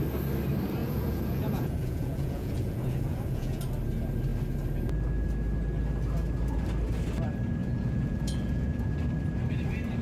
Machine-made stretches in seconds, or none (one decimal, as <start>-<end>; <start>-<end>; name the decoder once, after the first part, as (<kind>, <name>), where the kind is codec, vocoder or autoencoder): 0.8-3.6 (vocoder, Vocos); 7.6-8.9